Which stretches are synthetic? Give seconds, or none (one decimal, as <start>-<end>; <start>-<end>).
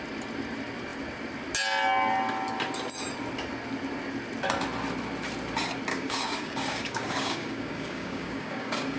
5.9-9.0